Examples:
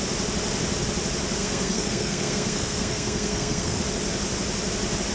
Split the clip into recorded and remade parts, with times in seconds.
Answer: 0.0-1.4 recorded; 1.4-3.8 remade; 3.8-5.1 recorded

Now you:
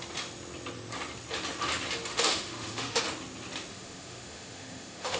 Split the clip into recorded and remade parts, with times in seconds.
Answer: 0.0-2.1 recorded; 2.1-3.0 remade; 3.0-3.7 recorded; 3.7-5.2 remade

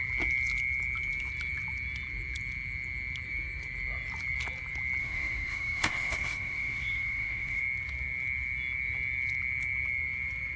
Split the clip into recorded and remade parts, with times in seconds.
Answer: 0.0-5.0 recorded; 5.0-7.6 remade; 7.6-10.6 recorded

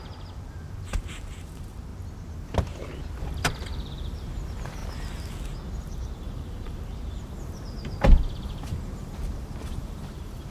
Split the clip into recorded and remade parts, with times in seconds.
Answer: 0.0-1.9 remade; 1.9-3.2 recorded; 3.2-4.8 remade; 4.8-5.8 recorded; 5.8-10.5 remade

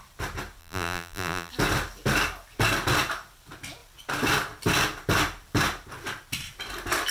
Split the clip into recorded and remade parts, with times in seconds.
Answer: 0.0-0.6 recorded; 0.6-1.5 remade; 1.5-7.1 recorded